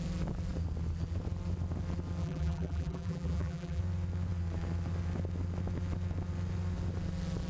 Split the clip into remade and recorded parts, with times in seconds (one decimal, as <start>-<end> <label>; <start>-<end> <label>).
0.0-2.2 recorded; 2.2-3.8 remade; 3.8-7.5 recorded